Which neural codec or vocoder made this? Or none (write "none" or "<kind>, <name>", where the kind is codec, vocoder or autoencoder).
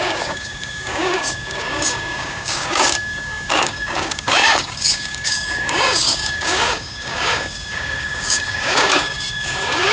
codec, DAC